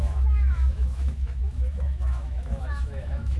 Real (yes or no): no